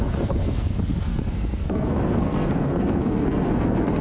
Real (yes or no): no